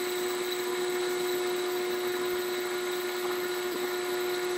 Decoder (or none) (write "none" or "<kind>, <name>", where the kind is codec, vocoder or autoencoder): none